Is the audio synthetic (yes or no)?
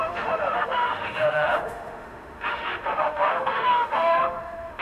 yes